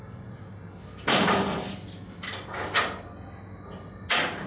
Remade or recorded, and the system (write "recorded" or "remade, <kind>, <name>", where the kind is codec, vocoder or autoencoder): recorded